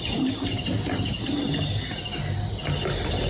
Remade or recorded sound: recorded